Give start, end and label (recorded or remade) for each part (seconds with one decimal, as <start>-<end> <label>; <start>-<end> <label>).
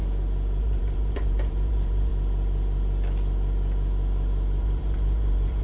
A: 0.0-0.6 recorded; 0.6-2.1 remade; 2.1-4.6 recorded; 4.6-5.6 remade